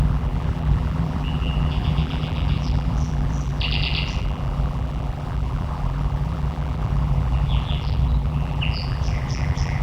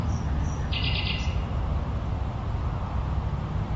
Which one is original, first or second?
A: second